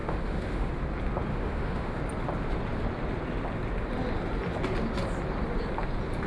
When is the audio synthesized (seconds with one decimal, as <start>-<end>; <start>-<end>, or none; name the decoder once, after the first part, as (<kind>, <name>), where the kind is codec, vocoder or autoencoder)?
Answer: 0.0-0.7 (autoencoder, DAC-VAE); 1.3-2.0